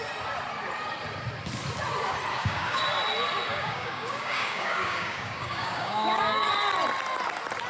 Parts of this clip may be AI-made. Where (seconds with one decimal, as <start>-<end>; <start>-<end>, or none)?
2.3-2.8; 3.5-6.5